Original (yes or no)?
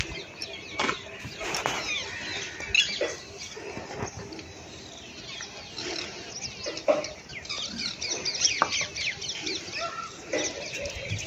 yes